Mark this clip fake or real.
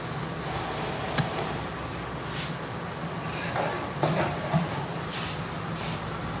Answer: real